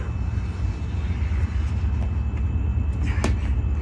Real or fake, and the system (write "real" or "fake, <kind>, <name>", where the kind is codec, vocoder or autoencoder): real